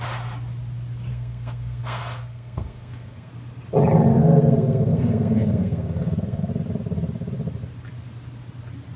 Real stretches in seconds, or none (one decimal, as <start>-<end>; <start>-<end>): 0.0-1.1; 3.3-4.1; 6.5-9.0